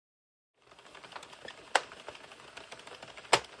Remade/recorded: recorded